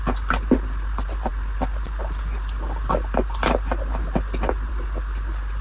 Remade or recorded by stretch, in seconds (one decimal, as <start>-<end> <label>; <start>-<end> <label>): 0.0-5.6 recorded

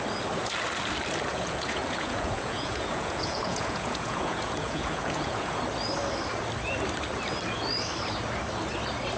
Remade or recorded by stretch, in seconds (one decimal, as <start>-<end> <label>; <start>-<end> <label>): 0.0-1.3 recorded; 1.3-5.6 remade; 5.6-9.2 recorded

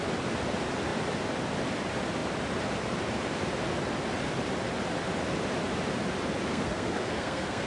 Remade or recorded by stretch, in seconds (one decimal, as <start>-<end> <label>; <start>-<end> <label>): 0.0-6.5 recorded; 6.5-7.7 remade

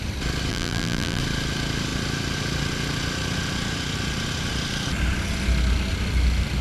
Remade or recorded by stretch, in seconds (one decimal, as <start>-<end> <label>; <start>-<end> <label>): 0.0-0.5 recorded; 0.5-1.2 remade; 1.2-6.6 recorded

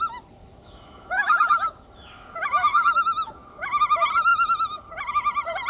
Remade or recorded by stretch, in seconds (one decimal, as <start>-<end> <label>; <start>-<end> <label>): 0.0-0.4 recorded; 0.4-3.8 remade; 3.8-5.7 recorded

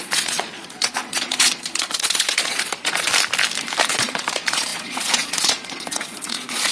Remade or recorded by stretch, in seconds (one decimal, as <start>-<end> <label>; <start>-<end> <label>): 0.0-3.1 remade; 3.1-3.9 recorded; 3.9-6.7 remade

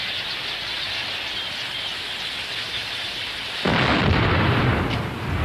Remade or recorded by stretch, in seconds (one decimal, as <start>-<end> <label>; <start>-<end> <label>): 0.0-5.4 recorded

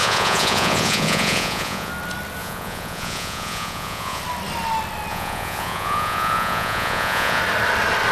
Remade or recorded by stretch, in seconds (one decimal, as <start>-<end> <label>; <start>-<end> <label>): 0.0-1.9 remade; 1.9-2.4 recorded; 2.4-4.2 remade; 4.2-5.1 recorded; 5.1-7.4 remade; 7.4-8.1 recorded